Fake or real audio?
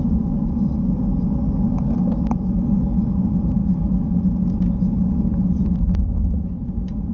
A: real